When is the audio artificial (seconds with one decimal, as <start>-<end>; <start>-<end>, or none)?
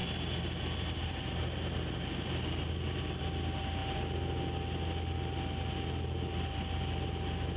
none